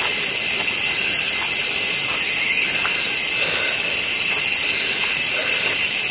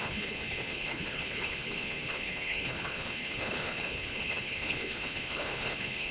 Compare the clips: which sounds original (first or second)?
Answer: first